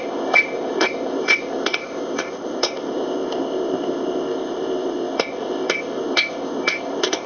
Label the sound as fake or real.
fake